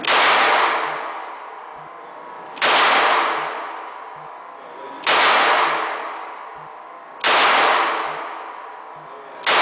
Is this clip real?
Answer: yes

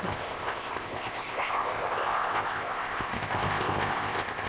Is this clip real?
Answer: no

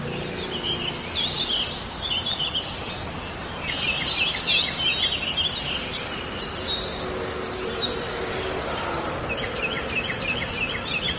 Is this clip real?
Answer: yes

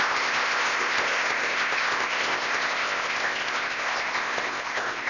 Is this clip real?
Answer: no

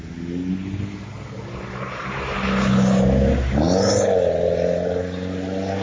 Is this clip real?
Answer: yes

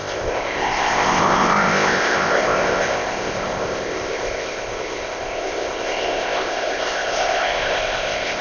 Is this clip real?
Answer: no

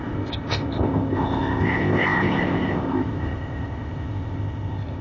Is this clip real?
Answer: no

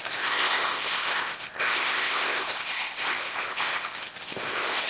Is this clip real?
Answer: no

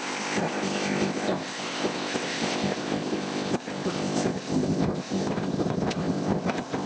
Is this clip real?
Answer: no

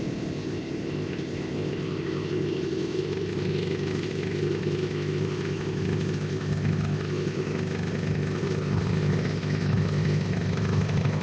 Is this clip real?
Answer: no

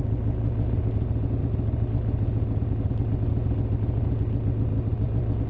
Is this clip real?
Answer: yes